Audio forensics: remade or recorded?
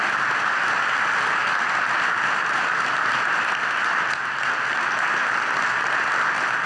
recorded